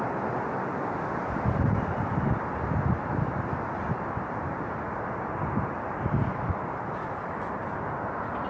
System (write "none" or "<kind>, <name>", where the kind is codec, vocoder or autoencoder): none